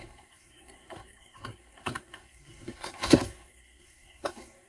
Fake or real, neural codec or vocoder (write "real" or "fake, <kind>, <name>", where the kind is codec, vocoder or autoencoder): fake, codec, SNAC